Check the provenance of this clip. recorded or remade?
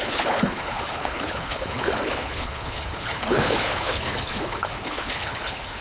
remade